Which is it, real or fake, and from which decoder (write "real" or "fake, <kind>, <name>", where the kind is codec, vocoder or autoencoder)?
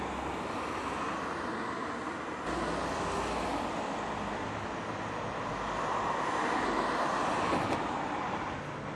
real